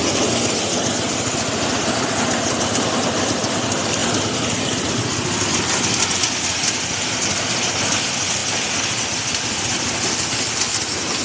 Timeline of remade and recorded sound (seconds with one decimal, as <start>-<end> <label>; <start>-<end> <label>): 0.0-11.2 recorded

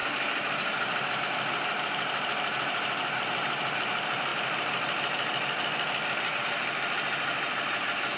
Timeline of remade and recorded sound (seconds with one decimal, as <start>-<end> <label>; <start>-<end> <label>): 0.0-8.2 recorded

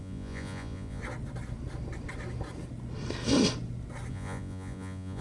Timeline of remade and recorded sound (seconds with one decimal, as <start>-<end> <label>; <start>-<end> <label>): 0.0-1.0 remade; 1.0-4.1 recorded; 4.1-5.2 remade

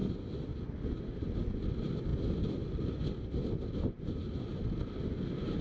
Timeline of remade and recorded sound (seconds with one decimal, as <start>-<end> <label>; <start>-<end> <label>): 0.0-5.6 recorded

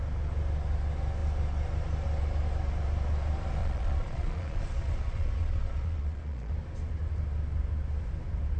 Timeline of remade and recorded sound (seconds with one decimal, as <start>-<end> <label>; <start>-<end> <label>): 0.0-3.6 recorded; 3.6-6.5 remade; 6.5-8.6 recorded